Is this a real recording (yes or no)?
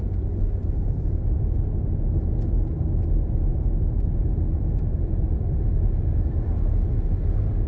yes